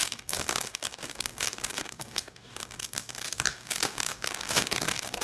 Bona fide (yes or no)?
no